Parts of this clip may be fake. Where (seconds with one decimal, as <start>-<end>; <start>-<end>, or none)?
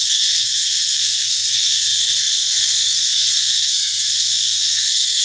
0.0-5.2